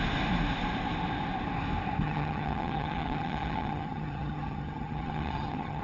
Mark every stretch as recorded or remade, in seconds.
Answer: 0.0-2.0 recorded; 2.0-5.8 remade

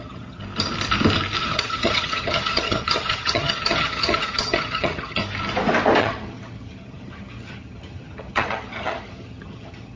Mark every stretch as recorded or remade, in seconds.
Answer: 0.0-0.4 remade; 0.4-1.4 recorded; 1.4-5.2 remade; 5.2-6.0 recorded; 6.0-10.0 remade

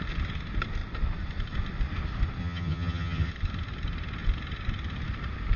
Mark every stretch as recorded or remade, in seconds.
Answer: 0.0-2.4 recorded; 2.4-3.3 remade; 3.3-5.6 recorded

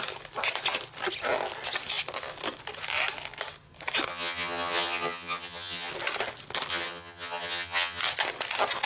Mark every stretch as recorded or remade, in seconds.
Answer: 0.0-4.1 recorded; 4.1-5.9 remade; 5.9-6.7 recorded; 6.7-8.0 remade; 8.0-8.8 recorded